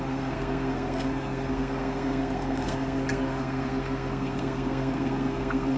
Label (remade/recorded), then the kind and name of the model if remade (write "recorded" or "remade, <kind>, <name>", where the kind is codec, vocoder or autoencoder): remade, codec, SNAC